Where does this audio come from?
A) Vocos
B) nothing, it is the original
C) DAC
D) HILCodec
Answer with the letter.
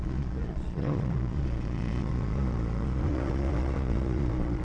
A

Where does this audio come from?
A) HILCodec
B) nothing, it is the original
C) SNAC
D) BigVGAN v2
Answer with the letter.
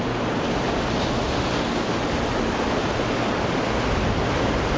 B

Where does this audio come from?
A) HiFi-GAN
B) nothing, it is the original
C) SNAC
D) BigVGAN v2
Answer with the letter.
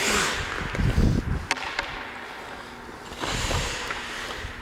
B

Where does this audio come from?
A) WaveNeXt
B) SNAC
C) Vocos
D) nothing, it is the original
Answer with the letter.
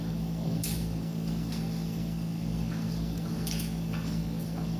B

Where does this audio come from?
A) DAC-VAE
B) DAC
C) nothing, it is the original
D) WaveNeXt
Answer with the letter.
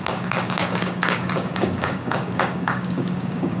B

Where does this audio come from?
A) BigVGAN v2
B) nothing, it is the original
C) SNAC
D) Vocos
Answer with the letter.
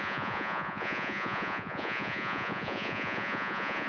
D